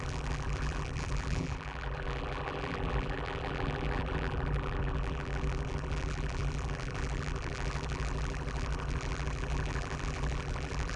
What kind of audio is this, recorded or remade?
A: remade